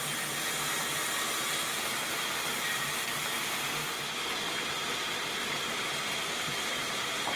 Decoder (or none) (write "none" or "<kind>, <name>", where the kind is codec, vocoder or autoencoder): none